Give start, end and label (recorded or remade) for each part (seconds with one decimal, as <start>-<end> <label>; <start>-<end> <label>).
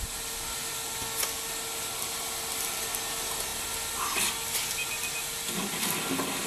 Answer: 0.0-6.5 recorded